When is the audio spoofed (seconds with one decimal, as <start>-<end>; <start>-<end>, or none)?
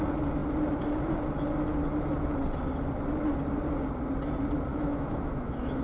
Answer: 4.7-5.8